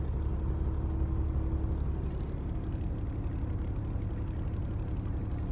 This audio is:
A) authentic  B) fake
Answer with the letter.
A